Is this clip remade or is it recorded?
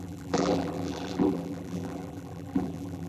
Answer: remade